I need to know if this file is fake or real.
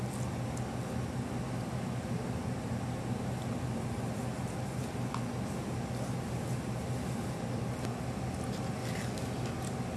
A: real